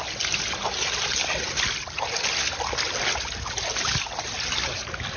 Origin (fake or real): real